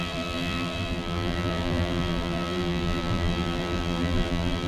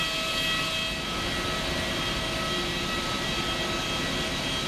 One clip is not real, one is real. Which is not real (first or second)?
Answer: first